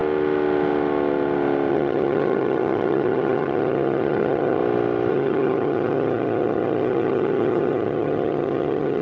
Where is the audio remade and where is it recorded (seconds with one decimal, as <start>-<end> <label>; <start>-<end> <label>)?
0.0-1.7 recorded; 1.7-4.6 remade; 4.6-5.1 recorded; 5.1-9.0 remade